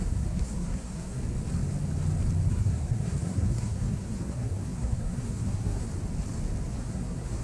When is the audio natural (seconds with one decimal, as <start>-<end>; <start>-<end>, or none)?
1.2-2.5; 5.9-6.8